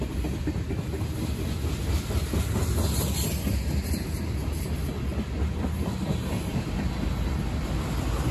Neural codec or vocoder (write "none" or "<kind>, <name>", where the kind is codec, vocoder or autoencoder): none